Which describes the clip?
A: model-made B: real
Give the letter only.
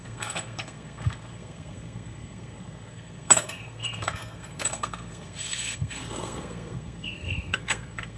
A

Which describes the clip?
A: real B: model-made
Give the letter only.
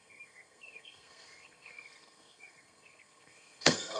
B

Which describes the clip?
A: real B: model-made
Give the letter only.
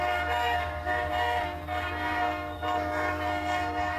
B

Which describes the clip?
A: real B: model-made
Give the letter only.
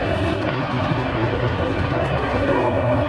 B